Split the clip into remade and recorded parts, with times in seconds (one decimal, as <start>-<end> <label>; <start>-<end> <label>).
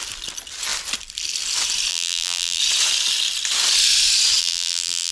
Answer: 0.0-1.9 recorded; 1.9-2.6 remade; 2.6-4.4 recorded; 4.4-5.1 remade